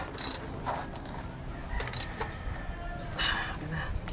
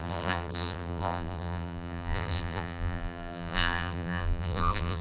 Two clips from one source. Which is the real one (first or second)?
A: first